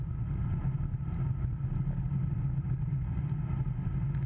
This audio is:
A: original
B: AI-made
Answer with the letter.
A